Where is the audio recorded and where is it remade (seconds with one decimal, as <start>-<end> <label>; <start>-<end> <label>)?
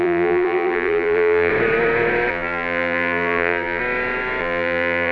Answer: 0.0-1.5 remade; 1.5-2.3 recorded; 2.3-3.8 remade; 3.8-4.4 recorded; 4.4-5.1 remade